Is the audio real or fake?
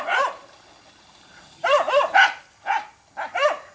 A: real